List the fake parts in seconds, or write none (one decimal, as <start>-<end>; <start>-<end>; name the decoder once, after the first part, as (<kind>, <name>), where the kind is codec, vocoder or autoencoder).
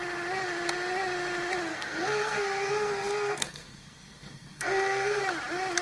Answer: 1.7-5.2 (codec, SNAC)